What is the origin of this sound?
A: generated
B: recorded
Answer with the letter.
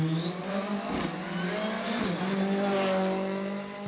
B